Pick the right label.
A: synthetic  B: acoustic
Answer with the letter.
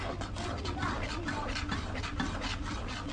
B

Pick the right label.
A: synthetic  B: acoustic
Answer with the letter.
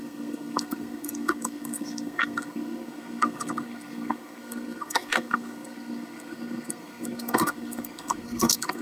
A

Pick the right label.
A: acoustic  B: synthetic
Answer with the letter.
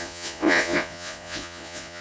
B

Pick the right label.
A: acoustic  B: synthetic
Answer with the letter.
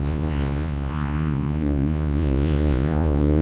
B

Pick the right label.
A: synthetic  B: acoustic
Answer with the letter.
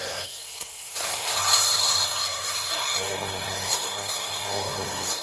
A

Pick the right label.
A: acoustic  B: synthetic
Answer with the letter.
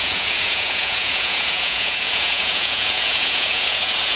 B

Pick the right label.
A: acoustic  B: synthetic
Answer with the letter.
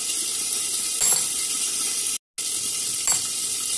A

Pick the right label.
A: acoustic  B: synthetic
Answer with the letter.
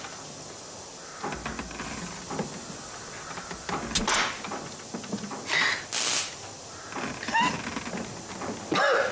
A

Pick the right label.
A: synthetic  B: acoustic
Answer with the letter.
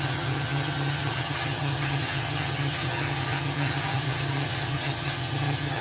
A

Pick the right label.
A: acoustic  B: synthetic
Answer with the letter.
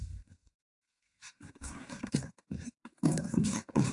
B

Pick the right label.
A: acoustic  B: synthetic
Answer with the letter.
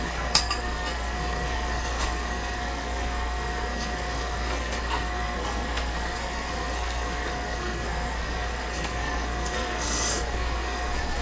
B